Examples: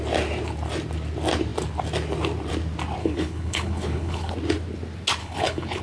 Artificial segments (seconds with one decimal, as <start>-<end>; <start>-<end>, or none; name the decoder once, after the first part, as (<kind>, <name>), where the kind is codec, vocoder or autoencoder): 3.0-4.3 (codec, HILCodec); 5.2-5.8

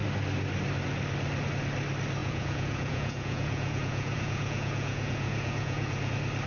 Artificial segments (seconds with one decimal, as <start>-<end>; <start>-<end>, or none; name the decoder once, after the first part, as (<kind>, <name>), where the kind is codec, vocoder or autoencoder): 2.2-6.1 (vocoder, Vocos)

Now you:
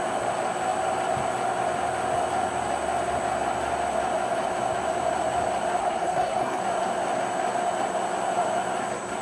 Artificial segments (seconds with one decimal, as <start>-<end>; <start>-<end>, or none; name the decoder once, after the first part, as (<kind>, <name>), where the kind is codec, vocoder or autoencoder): 5.8-6.6 (codec, SNAC)